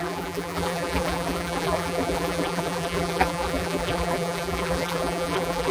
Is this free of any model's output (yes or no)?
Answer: no